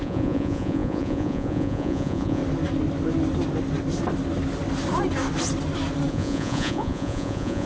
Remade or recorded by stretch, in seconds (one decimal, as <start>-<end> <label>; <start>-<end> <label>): 0.0-2.4 remade; 2.4-6.1 recorded; 6.1-7.7 remade